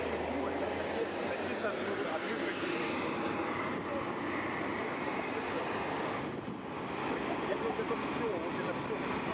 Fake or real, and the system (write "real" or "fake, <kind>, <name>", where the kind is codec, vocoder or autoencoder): real